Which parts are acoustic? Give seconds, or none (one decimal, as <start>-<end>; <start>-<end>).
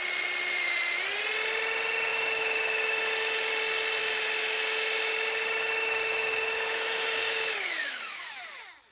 0.0-2.1; 3.5-4.0; 8.3-8.9